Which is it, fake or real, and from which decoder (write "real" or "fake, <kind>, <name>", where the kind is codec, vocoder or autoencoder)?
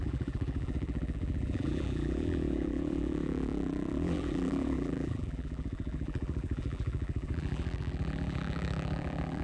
fake, vocoder, BigVGAN v2